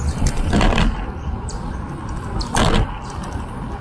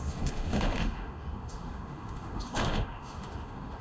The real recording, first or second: first